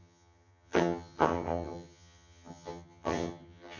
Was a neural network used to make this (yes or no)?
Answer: yes